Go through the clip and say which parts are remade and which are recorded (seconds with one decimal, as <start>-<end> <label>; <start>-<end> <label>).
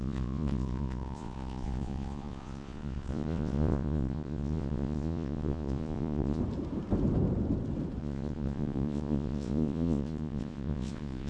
0.0-6.4 remade; 6.4-8.0 recorded; 8.0-11.3 remade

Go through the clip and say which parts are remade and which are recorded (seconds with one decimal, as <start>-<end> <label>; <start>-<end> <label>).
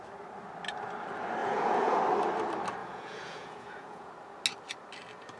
0.0-1.4 recorded; 1.4-2.0 remade; 2.0-2.8 recorded; 2.8-4.1 remade; 4.1-5.4 recorded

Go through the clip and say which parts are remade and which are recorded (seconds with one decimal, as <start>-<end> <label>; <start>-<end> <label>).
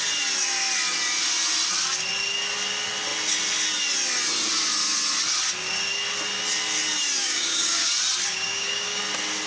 0.0-7.2 recorded; 7.2-7.9 remade; 7.9-8.3 recorded; 8.3-9.0 remade; 9.0-9.5 recorded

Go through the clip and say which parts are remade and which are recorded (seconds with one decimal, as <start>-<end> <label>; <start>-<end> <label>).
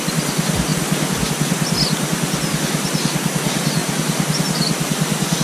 0.0-0.7 recorded; 0.7-1.3 remade; 1.3-5.4 recorded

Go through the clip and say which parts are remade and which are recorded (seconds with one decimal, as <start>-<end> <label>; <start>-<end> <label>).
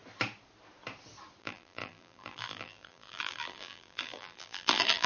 0.0-1.4 recorded; 1.4-5.1 remade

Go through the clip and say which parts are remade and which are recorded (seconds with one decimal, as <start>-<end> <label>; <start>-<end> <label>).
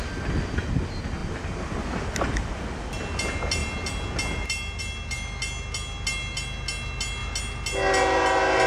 0.0-8.7 recorded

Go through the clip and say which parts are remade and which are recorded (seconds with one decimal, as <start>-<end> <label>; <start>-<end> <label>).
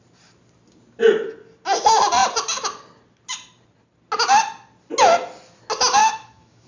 0.0-6.0 recorded; 6.0-6.7 remade